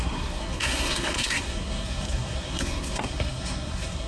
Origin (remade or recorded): remade